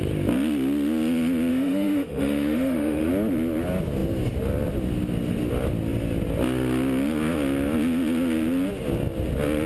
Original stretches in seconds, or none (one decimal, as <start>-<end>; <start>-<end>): 0.0-1.5; 3.1-9.7